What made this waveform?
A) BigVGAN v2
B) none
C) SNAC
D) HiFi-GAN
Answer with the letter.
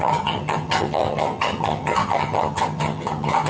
D